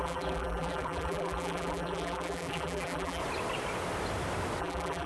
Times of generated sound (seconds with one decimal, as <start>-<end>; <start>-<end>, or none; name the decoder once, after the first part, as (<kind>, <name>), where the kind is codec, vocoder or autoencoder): 0.0-3.2 (vocoder, BigVGAN v2); 4.6-5.1